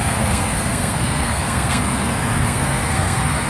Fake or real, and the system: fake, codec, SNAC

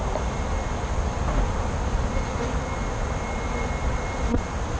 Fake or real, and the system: real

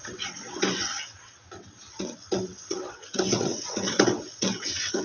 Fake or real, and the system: fake, vocoder, WaveNeXt